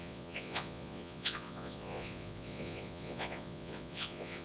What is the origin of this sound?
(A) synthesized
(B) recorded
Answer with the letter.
A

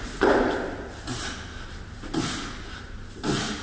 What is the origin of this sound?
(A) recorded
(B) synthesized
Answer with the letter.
A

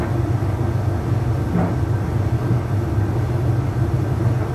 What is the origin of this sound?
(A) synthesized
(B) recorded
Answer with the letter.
B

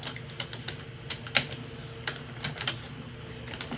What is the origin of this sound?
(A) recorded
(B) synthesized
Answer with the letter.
A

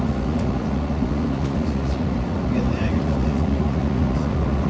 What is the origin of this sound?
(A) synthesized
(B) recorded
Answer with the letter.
A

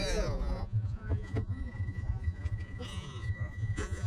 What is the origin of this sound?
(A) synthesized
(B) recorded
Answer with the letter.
A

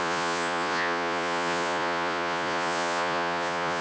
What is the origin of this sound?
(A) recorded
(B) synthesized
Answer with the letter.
B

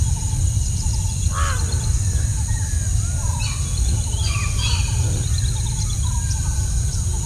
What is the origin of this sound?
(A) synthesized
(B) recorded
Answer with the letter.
B